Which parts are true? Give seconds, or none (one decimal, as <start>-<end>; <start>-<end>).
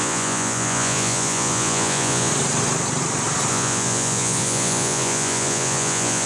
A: 2.3-3.5